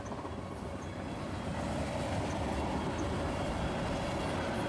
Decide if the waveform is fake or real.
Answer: real